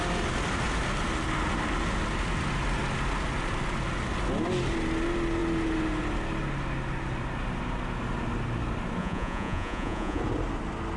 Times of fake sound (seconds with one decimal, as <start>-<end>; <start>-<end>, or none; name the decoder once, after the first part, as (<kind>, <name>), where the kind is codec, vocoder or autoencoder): 9.0-10.2 (vocoder, Vocos)